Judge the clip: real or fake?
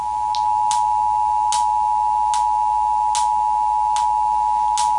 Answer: real